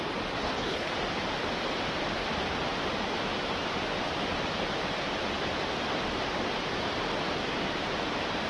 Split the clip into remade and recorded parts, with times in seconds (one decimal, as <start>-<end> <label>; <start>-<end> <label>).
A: 0.0-0.4 recorded; 0.4-0.9 remade; 0.9-8.5 recorded